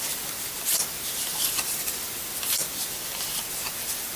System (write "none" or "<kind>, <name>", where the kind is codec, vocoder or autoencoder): none